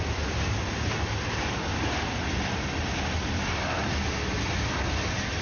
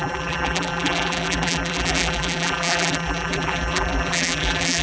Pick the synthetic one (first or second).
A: second